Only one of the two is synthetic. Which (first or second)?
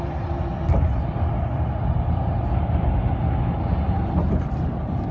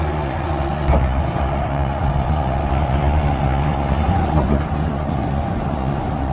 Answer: second